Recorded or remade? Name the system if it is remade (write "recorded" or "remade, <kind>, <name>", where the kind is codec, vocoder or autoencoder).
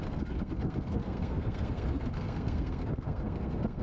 remade, codec, SNAC